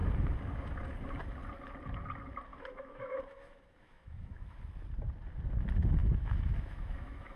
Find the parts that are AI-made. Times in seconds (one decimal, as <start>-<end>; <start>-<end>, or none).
2.5-4.6; 6.0-7.4

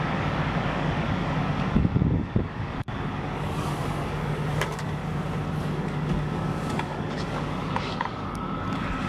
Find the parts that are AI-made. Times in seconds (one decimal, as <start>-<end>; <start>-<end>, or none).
0.0-5.0; 5.6-9.1

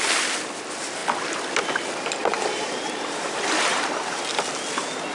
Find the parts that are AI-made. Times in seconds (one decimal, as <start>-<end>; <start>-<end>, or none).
2.2-4.3

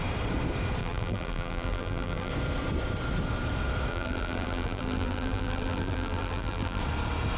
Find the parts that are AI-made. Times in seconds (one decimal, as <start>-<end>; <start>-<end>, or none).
0.8-2.3; 3.9-6.8

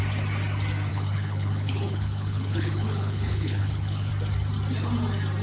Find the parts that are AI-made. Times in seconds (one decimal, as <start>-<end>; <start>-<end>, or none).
0.9-4.1

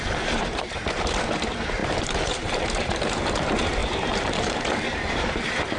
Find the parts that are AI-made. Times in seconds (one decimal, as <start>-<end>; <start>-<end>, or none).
0.0-5.8

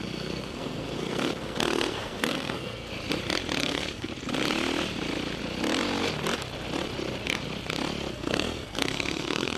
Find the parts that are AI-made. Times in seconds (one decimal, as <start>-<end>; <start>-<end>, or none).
0.0-2.9; 3.6-4.1; 8.1-9.6

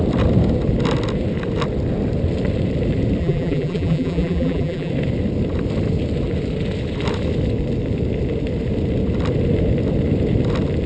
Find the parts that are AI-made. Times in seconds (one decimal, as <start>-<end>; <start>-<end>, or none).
3.2-4.9